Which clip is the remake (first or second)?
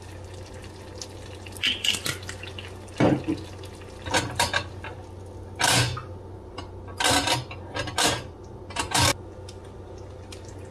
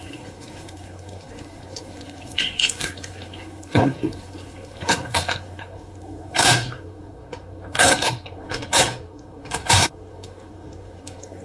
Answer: second